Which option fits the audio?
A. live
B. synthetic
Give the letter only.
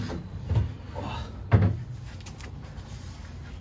A